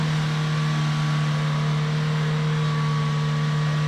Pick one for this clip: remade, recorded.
recorded